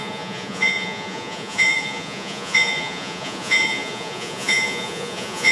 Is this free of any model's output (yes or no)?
no